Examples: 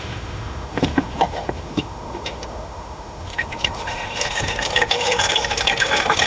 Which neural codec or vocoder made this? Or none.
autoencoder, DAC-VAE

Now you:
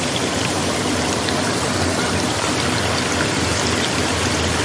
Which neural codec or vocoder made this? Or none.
none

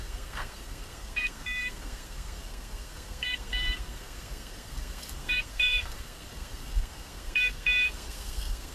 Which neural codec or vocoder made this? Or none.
codec, SNAC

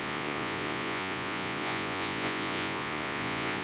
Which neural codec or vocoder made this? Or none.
vocoder, Vocos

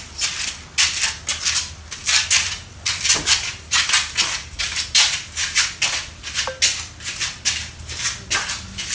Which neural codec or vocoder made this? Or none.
none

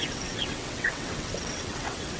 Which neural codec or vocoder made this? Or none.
vocoder, WaveNeXt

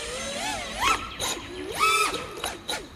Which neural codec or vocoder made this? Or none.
none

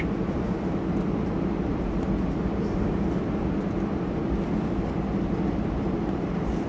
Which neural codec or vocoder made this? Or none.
none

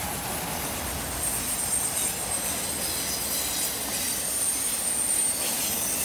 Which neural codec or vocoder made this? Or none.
none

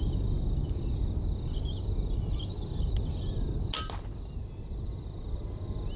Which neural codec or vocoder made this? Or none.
none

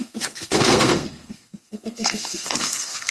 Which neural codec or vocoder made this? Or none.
codec, SNAC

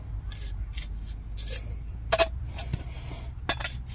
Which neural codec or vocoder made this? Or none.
none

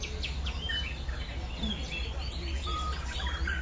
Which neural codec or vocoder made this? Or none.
none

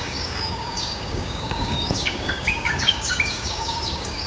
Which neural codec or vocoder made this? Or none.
codec, DAC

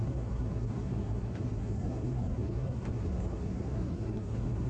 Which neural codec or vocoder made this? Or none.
codec, SNAC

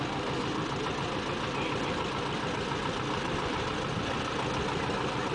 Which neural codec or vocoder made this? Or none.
none